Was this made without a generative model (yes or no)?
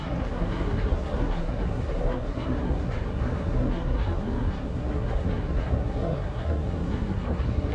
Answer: no